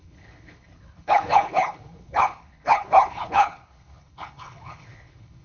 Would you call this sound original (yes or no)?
no